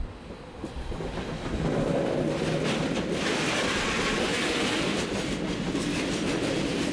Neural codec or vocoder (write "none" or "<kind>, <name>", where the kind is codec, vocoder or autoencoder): none